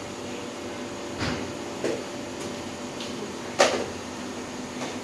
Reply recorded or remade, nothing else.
recorded